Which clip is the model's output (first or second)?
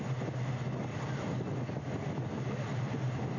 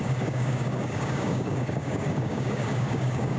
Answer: second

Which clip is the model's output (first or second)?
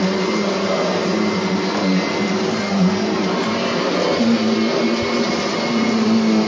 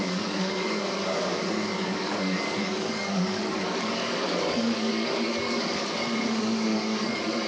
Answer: second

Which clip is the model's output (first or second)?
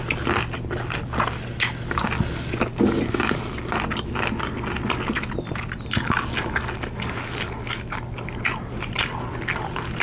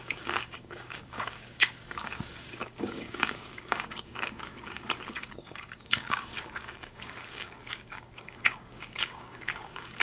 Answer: second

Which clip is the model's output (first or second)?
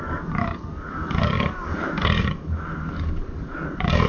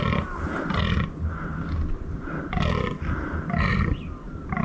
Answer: first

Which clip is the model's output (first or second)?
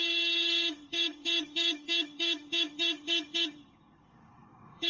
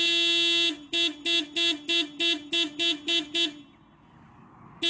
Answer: first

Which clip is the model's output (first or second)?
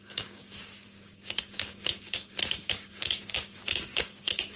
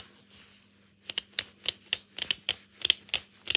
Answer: first